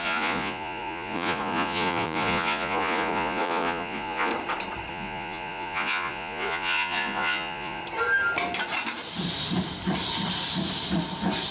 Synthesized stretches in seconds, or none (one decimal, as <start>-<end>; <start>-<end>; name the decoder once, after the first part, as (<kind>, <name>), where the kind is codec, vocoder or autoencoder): 0.0-4.3 (vocoder, Vocos); 4.9-7.8